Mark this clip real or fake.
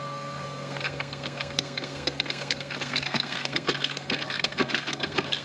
fake